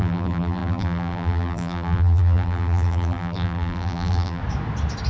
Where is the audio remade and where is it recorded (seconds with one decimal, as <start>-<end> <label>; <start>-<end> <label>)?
0.0-4.4 remade; 4.4-5.1 recorded